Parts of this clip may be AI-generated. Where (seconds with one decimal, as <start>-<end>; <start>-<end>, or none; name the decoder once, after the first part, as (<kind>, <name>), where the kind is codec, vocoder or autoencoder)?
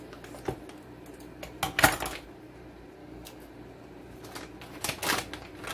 3.0-3.5 (codec, DAC)